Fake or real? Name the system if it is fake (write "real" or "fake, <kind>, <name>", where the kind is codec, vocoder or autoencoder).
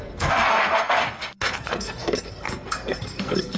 fake, codec, SNAC